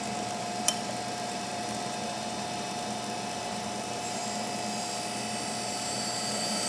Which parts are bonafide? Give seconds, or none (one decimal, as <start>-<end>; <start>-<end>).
4.2-5.7